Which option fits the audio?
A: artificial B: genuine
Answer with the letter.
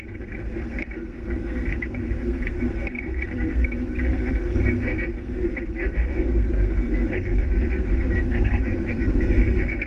A